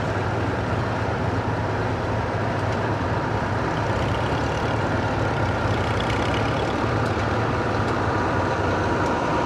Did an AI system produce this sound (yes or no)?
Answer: yes